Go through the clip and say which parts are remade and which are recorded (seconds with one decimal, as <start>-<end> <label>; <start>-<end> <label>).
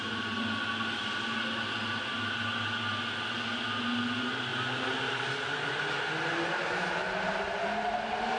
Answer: 0.0-8.4 recorded